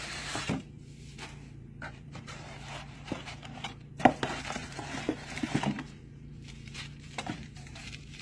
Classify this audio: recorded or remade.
remade